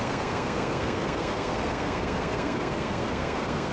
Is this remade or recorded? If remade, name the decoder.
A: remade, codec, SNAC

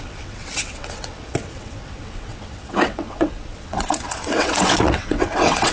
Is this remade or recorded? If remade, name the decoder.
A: remade, vocoder, WaveNeXt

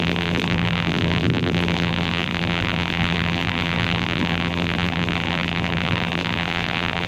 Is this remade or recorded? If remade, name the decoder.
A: remade, vocoder, BigVGAN v2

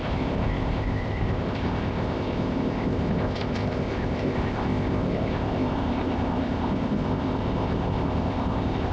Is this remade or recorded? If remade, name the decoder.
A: remade, codec, ZipCodec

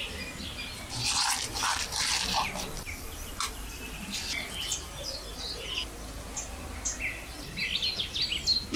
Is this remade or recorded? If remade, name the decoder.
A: recorded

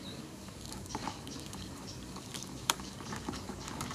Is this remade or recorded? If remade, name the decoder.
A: remade, codec, DAC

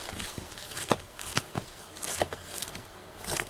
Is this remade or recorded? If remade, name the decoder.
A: remade, codec, SNAC